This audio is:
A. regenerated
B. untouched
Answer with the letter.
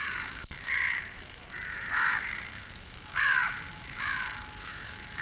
A